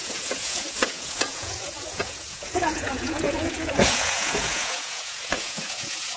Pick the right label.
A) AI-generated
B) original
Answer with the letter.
A